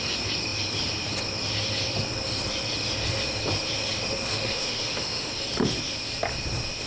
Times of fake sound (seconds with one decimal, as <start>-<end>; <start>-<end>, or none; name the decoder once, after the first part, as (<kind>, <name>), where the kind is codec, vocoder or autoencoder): 4.3-5.3 (autoencoder, DAC-VAE)